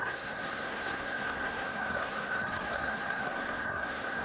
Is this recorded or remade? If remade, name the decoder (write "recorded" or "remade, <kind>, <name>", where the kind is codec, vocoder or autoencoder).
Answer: remade, codec, SNAC